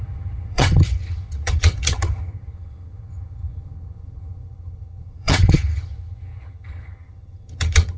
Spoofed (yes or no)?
yes